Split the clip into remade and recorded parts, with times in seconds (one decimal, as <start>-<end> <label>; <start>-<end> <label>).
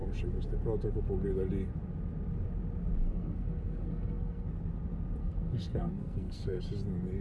0.0-3.0 recorded; 3.0-4.5 remade; 4.5-5.2 recorded; 5.2-6.6 remade; 6.6-7.2 recorded